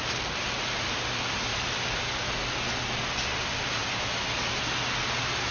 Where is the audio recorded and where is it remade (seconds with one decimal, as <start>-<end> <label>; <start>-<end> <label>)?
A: 0.0-5.5 recorded